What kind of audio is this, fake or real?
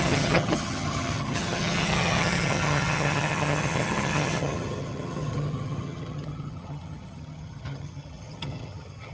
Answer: fake